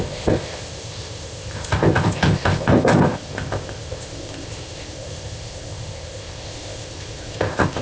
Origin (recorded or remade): remade